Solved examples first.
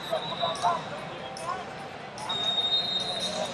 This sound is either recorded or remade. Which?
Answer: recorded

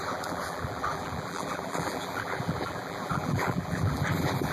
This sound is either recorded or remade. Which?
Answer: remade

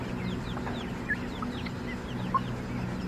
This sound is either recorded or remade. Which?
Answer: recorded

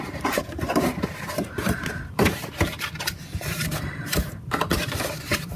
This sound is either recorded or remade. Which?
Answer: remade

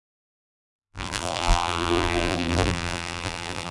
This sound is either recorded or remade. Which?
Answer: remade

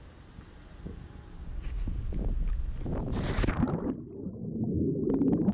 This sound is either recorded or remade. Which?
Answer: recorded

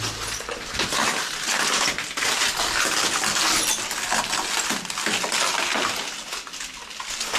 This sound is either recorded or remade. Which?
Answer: recorded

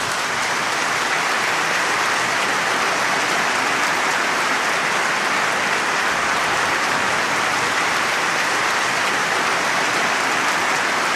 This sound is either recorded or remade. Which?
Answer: remade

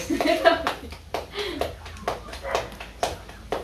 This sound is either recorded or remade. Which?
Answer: recorded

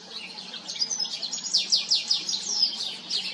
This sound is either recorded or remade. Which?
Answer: recorded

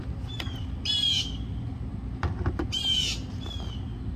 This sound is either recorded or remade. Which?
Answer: recorded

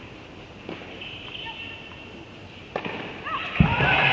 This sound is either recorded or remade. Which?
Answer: recorded